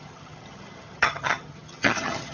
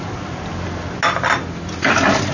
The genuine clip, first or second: second